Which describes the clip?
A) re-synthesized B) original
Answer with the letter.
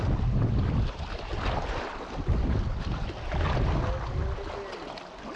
B